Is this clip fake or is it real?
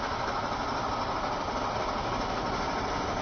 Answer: real